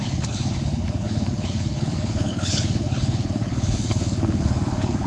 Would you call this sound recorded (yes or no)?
no